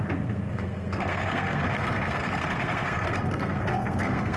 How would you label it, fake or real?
fake